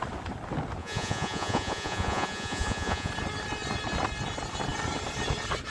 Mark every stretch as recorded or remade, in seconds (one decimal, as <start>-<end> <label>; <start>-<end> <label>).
0.0-0.8 recorded; 0.8-3.1 remade; 3.1-5.7 recorded